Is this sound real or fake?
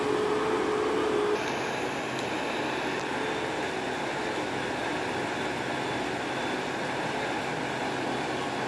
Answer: real